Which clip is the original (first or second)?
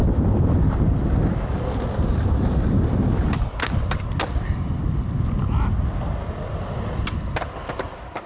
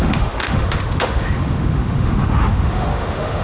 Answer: first